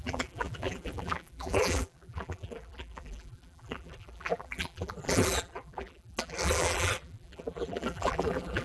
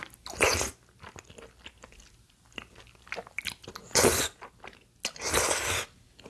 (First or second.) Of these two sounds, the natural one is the second